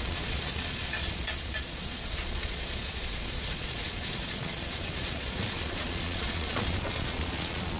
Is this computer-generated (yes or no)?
yes